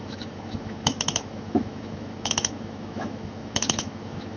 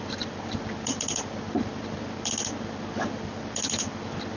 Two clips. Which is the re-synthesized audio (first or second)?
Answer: first